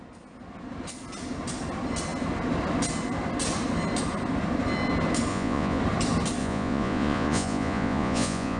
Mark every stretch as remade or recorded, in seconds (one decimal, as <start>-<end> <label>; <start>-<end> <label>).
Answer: 0.0-5.3 recorded; 5.3-5.8 remade; 5.8-6.4 recorded; 6.4-8.6 remade